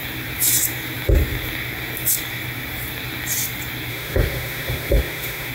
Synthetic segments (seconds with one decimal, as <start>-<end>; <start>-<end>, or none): 3.9-5.5